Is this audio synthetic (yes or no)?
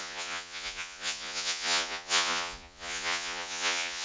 yes